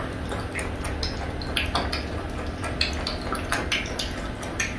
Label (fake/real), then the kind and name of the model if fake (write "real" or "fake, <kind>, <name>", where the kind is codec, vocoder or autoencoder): real